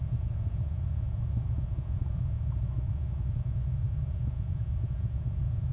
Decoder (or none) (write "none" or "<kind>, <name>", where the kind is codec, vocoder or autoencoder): vocoder, Vocos